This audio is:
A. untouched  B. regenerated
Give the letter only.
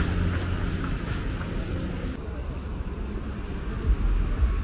A